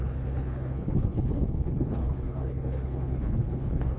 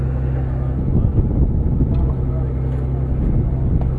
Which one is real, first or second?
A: second